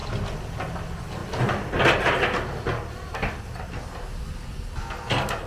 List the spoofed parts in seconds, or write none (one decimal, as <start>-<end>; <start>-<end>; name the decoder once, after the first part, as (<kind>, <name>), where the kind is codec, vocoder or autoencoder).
none

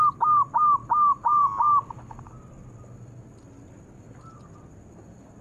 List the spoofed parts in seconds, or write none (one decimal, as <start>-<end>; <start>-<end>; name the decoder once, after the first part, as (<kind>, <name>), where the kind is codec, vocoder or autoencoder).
none

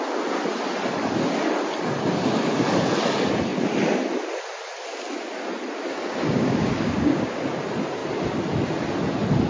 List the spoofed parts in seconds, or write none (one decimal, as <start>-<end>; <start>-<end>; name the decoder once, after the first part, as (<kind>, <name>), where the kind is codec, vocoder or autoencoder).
5.9-7.4 (codec, DAC)

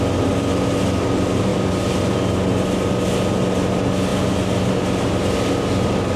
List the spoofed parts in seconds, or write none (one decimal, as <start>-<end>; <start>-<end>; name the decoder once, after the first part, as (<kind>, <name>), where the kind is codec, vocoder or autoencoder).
none